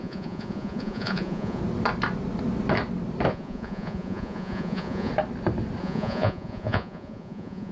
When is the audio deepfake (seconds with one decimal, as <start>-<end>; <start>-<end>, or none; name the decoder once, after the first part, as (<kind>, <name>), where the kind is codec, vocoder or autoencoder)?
0.0-1.6 (vocoder, Vocos); 3.3-5.1; 5.8-7.7